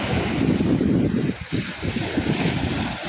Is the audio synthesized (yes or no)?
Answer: no